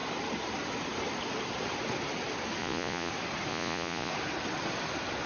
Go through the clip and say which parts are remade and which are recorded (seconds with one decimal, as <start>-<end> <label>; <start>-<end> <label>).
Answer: 0.0-2.6 recorded; 2.6-3.1 remade; 3.1-3.5 recorded; 3.5-4.1 remade; 4.1-5.3 recorded